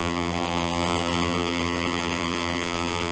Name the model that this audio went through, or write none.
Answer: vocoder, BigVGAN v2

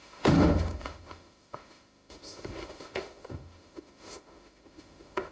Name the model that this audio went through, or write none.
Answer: autoencoder, DAC-VAE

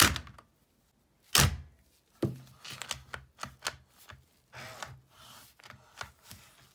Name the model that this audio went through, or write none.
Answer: none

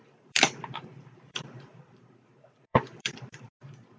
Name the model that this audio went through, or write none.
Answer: vocoder, BigVGAN v2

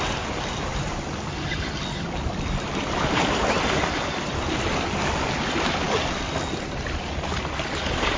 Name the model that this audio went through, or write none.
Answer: none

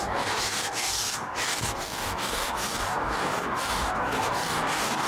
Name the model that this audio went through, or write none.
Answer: codec, DAC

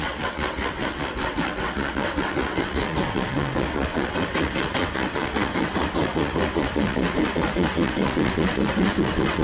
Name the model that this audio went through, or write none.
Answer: vocoder, WaveNeXt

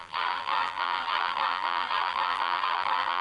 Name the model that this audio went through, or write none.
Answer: vocoder, BigVGAN v2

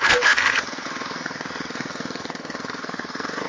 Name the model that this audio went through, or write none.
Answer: codec, SNAC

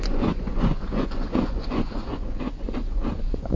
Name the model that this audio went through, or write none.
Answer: vocoder, Vocos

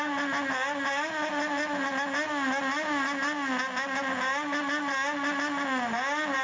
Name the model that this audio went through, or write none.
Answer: none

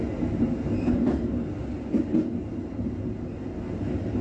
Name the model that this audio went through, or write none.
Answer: none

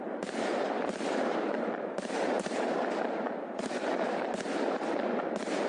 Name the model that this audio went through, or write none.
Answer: vocoder, BigVGAN v2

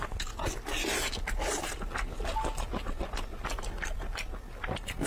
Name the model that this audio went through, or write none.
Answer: none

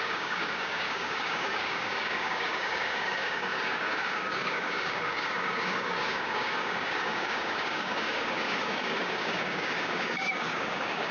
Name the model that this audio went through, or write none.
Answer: codec, DAC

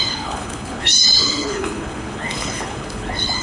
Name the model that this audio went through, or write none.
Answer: codec, HILCodec